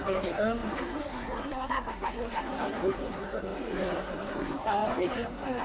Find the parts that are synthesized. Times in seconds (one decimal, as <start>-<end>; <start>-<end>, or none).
0.0-5.6